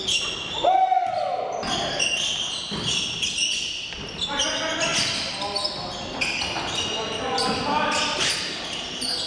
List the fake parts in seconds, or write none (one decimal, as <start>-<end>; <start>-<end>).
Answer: none